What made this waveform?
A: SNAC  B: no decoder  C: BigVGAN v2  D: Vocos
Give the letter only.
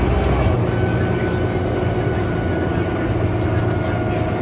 B